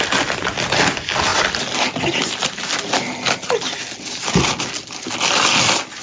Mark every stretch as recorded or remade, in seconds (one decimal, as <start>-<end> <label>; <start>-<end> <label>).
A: 0.0-6.0 recorded